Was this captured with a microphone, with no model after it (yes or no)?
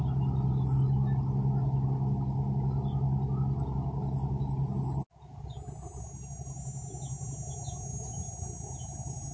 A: yes